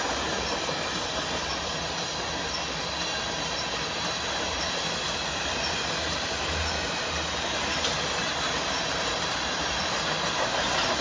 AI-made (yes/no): no